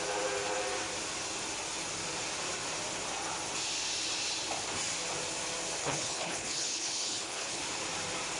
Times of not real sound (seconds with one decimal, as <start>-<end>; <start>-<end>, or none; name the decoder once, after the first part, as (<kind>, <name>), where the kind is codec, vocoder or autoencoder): 5.8-7.6 (codec, HILCodec)